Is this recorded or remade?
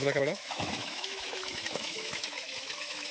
remade